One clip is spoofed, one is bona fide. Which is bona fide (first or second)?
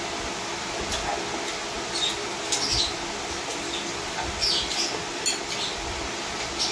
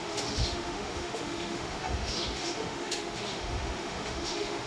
first